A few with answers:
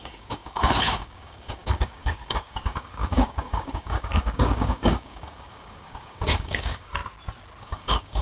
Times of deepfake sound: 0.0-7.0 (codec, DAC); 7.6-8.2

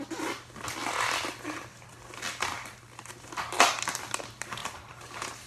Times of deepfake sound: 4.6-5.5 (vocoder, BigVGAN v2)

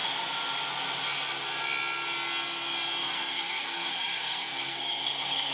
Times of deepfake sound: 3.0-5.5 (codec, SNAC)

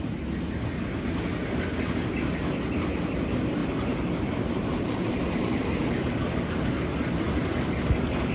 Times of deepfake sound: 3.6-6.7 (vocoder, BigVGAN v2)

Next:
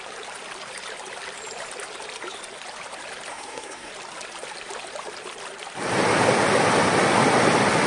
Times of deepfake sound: 3.3-3.9 (codec, SNAC)

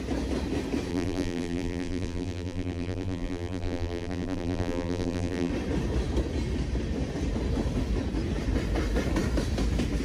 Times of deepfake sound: 0.9-5.5 (vocoder, BigVGAN v2)